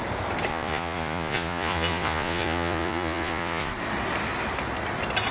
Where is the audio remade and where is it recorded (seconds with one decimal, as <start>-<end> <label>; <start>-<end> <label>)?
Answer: 0.0-0.5 recorded; 0.5-3.7 remade; 3.7-5.3 recorded